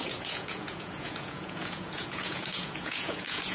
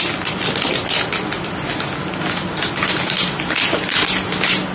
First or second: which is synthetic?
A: first